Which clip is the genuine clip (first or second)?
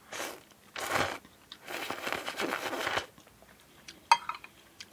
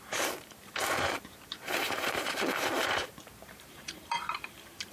first